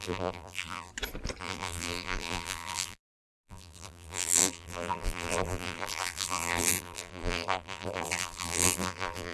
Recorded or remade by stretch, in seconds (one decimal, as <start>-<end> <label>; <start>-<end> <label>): 0.0-0.9 remade; 0.9-1.4 recorded; 1.4-9.3 remade